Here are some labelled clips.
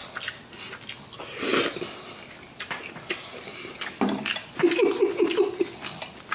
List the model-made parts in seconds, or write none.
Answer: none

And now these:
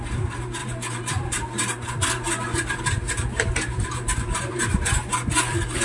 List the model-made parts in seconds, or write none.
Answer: 0.6-1.9 (vocoder, BigVGAN v2); 2.5-5.1

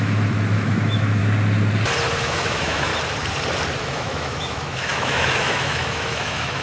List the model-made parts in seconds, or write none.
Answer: 0.0-1.2 (autoencoder, DAC-VAE); 2.2-2.9; 3.8-6.6

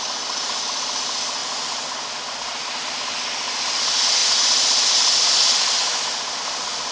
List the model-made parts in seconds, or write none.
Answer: none

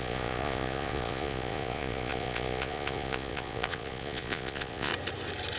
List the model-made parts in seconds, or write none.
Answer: 0.0-4.9 (vocoder, Vocos)

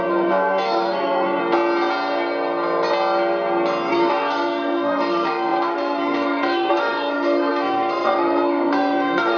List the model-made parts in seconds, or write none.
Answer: 0.0-1.4 (codec, SNAC); 3.9-9.4

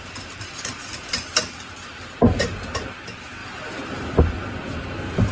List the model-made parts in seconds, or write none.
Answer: none

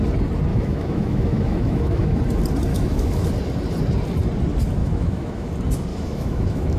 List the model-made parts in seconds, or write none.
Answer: 0.5-2.2 (autoencoder, DAC-VAE); 2.7-3.3; 4.8-5.5; 5.9-6.8